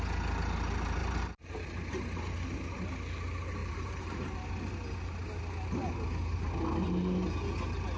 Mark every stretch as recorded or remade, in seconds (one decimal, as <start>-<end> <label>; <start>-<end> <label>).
0.0-1.0 recorded; 1.0-1.9 remade; 1.9-3.6 recorded; 3.6-4.5 remade; 4.5-8.0 recorded